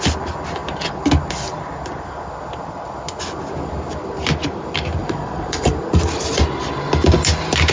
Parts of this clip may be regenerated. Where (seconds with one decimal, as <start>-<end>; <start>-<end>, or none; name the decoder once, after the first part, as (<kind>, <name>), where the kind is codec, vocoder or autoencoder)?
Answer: 5.0-5.7 (vocoder, Vocos)